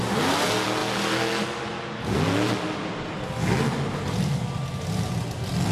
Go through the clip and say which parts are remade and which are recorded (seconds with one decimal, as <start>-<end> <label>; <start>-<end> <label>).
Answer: 0.0-5.7 recorded